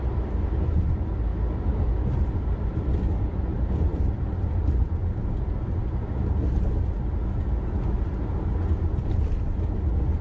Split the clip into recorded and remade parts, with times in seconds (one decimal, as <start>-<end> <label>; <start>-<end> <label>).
0.0-1.3 remade; 1.3-1.9 recorded; 1.9-5.0 remade; 5.0-10.2 recorded